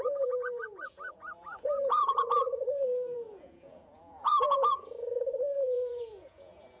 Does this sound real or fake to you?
fake